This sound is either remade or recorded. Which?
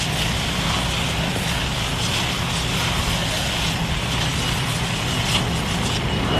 recorded